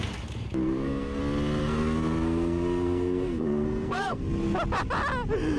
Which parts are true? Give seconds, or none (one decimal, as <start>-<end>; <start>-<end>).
0.0-0.6; 1.2-1.6; 4.2-5.6